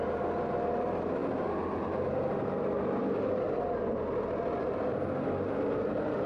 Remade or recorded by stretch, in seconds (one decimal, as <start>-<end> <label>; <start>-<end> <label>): 0.0-6.3 recorded